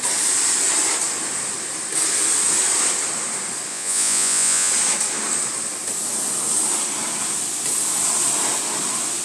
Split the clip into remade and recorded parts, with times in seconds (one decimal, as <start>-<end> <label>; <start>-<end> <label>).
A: 0.0-3.7 recorded; 3.7-4.7 remade; 4.7-9.2 recorded